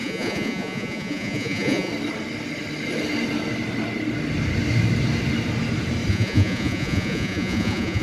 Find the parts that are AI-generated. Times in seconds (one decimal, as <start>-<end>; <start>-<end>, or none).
0.0-1.9; 6.1-8.0